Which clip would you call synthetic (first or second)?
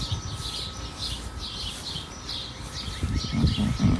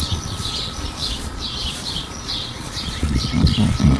second